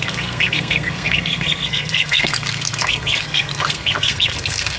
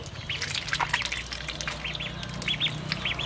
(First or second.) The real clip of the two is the second